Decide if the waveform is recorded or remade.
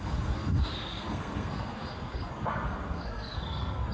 remade